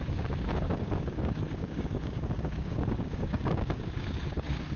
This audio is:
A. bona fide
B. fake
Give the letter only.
B